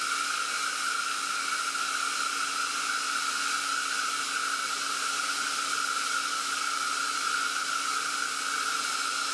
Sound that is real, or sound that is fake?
real